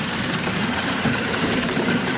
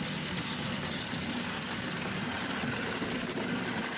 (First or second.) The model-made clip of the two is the first